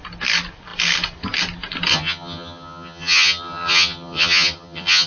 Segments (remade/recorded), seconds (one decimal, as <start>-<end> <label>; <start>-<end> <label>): 0.0-1.9 recorded; 1.9-5.1 remade